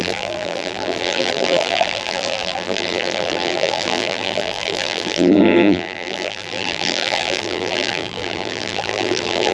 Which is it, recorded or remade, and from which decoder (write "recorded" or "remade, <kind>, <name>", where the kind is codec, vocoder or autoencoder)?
remade, vocoder, BigVGAN v2